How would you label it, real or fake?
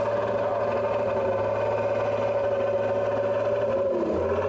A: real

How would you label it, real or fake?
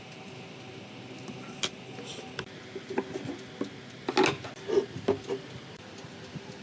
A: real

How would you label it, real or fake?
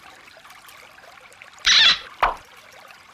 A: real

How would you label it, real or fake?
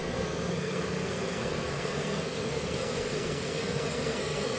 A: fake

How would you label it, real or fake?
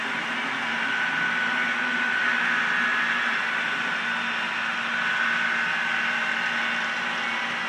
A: real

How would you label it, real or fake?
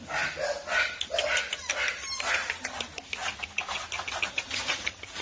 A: real